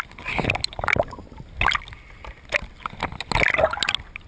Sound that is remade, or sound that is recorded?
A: recorded